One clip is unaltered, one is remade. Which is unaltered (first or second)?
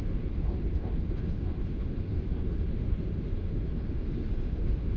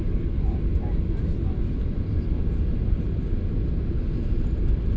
second